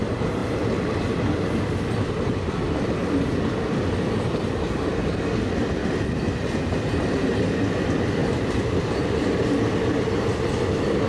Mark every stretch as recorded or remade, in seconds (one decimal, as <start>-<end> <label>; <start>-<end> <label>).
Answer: 0.0-0.4 recorded; 0.4-2.5 remade; 2.5-3.0 recorded; 3.0-4.1 remade; 4.1-4.9 recorded; 4.9-7.0 remade; 7.0-8.2 recorded; 8.2-9.3 remade; 9.3-11.1 recorded